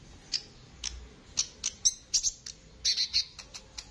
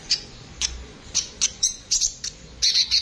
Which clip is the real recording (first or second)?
first